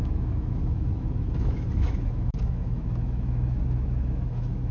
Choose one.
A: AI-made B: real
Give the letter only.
A